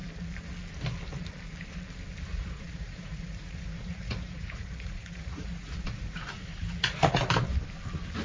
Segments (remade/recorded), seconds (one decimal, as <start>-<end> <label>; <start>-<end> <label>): 0.0-2.3 recorded; 2.3-7.2 remade; 7.2-8.2 recorded